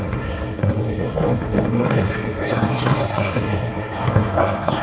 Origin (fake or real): fake